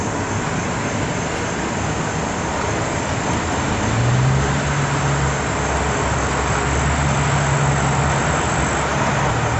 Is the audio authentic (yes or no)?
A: yes